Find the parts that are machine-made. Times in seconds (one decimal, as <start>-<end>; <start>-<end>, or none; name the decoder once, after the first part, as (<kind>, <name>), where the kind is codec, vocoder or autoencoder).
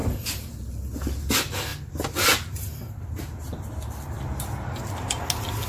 none